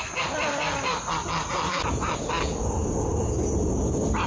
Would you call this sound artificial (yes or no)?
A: no